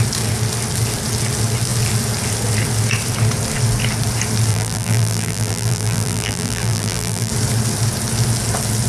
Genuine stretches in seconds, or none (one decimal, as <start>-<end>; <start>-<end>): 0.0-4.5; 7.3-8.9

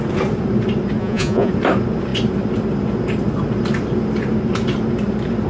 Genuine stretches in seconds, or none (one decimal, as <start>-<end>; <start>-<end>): 0.0-1.0; 1.5-5.5

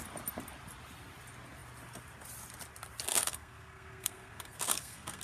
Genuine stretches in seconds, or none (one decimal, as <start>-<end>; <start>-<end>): 0.0-3.1

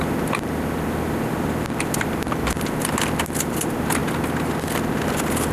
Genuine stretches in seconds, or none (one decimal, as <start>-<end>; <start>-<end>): 0.0-5.5

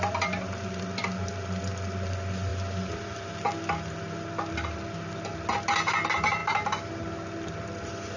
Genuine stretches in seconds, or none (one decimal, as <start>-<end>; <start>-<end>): 0.0-8.2

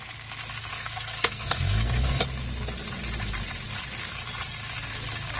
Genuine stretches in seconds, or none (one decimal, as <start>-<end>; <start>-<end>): 0.0-0.7; 2.2-5.4

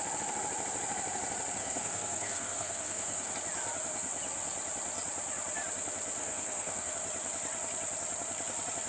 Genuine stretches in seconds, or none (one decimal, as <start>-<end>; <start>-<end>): 0.0-1.6; 3.3-6.2; 6.9-8.9